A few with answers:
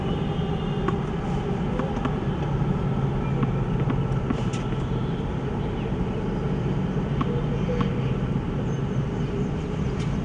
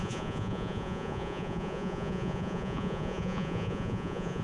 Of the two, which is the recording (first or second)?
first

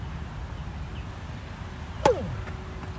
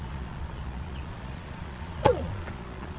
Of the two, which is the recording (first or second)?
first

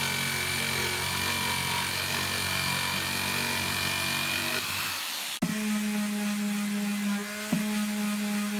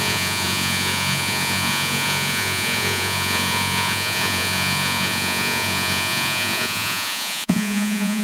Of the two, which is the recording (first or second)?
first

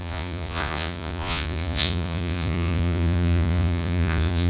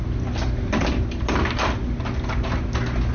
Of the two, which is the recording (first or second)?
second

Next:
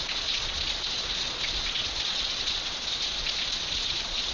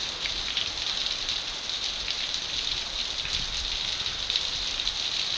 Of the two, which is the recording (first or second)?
second